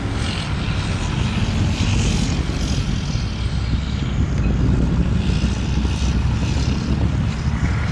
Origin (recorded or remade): recorded